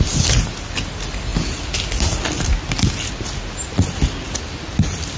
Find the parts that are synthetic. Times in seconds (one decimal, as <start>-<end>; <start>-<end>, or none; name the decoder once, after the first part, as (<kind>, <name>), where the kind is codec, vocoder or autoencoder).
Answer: none